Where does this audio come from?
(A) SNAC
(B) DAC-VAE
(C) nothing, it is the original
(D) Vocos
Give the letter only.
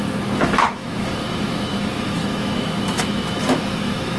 B